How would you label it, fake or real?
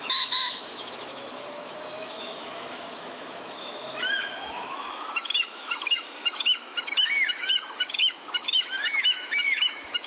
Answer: fake